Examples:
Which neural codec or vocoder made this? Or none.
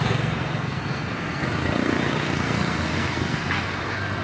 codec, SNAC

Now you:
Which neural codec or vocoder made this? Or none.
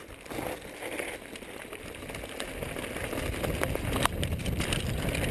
none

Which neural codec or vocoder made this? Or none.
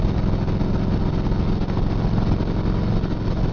none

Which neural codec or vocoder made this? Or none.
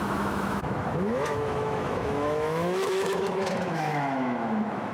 autoencoder, DAC-VAE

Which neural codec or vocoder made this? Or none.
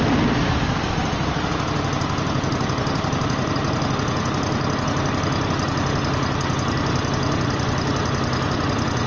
none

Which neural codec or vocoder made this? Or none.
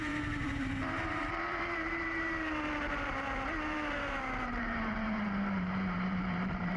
vocoder, BigVGAN v2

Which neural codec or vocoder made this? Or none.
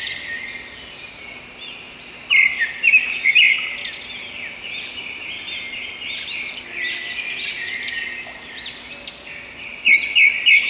none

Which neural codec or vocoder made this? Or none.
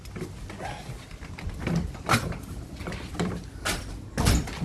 none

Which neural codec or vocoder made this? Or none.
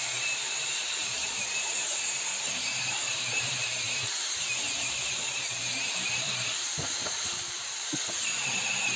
vocoder, BigVGAN v2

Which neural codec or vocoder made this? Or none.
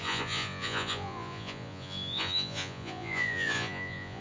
vocoder, Vocos